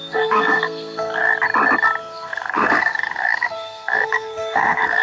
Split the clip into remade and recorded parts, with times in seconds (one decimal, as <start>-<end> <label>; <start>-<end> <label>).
0.0-1.2 remade; 1.2-2.0 recorded; 2.0-5.0 remade

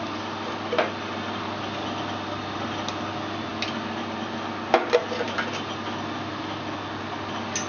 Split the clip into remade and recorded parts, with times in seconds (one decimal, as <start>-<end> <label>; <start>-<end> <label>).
0.0-7.7 recorded

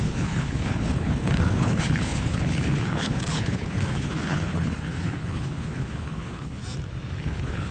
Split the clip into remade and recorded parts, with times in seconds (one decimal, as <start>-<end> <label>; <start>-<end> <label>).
0.0-6.6 remade; 6.6-7.2 recorded; 7.2-7.7 remade

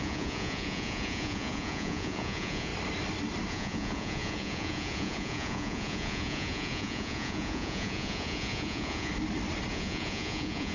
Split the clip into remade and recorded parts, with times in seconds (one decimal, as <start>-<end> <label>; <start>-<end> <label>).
0.0-2.7 remade; 2.7-3.5 recorded; 3.5-9.1 remade; 9.1-9.7 recorded; 9.7-10.7 remade

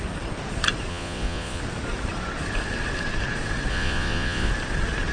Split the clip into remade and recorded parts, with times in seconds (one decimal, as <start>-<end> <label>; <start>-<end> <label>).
0.0-0.9 recorded; 0.9-1.6 remade; 1.6-3.7 recorded; 3.7-4.5 remade; 4.5-5.1 recorded

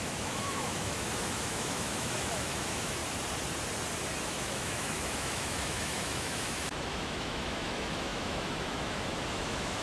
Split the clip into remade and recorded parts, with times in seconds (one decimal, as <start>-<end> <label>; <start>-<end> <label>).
0.0-3.0 remade; 3.0-4.2 recorded; 4.2-9.8 remade

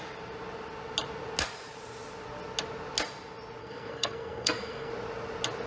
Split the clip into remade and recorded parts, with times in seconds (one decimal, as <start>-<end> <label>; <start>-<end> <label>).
0.0-3.6 recorded; 3.6-4.9 remade; 4.9-5.7 recorded